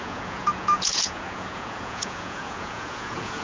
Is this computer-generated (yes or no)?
yes